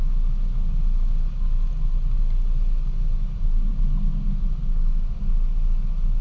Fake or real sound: real